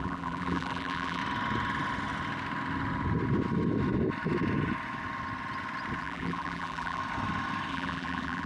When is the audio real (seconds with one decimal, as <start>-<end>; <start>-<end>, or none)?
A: 1.2-6.0; 7.0-7.7